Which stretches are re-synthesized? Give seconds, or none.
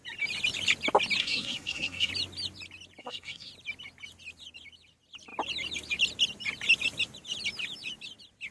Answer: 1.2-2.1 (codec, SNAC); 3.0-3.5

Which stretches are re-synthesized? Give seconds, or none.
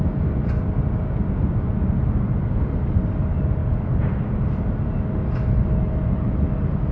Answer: none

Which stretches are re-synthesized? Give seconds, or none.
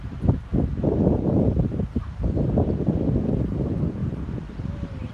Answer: none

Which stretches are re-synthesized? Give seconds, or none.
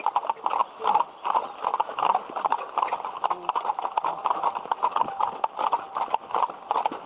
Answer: none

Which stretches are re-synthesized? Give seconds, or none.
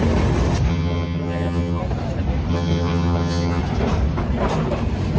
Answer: 0.7-1.8 (vocoder, HiFi-GAN); 2.5-3.6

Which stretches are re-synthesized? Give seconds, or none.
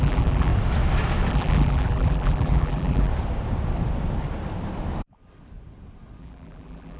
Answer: 0.0-0.5 (vocoder, BigVGAN v2); 1.3-3.1; 6.2-7.0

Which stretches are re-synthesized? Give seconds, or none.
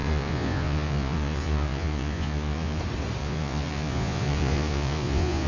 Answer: 0.0-2.8 (vocoder, Vocos); 3.2-5.5